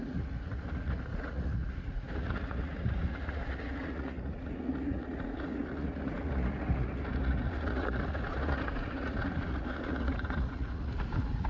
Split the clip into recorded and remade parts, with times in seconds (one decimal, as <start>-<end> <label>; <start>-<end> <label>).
0.0-11.5 remade